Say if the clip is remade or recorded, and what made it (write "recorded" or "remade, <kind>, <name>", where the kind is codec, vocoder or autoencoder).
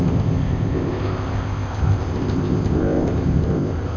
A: remade, codec, ZipCodec